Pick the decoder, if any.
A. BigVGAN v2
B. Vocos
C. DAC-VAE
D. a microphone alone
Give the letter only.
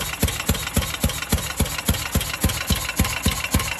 D